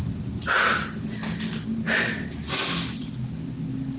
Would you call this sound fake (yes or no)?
no